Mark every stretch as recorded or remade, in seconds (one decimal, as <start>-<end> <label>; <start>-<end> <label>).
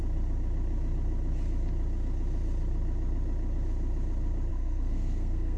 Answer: 0.0-4.5 recorded; 4.5-5.6 remade